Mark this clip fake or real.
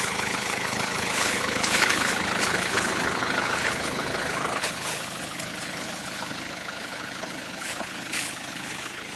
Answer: fake